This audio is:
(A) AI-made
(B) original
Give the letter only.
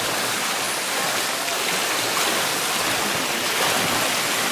B